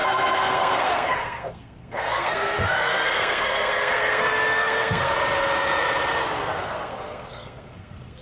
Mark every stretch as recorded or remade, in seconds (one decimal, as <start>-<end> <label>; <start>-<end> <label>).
0.0-5.1 remade; 5.1-6.6 recorded; 6.6-8.2 remade